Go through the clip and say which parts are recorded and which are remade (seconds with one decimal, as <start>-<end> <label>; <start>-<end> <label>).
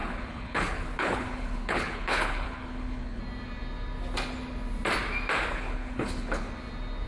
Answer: 0.0-3.2 remade; 3.2-5.5 recorded; 5.5-6.5 remade; 6.5-7.1 recorded